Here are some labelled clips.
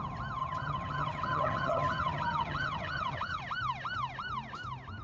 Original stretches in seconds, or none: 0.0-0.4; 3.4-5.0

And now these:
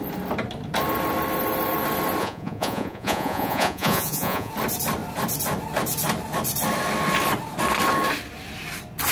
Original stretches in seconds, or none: 0.0-2.2; 4.5-9.1

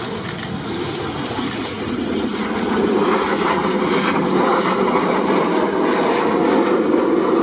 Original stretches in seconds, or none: 0.0-7.4